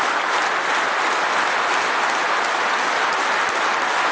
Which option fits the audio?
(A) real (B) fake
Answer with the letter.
A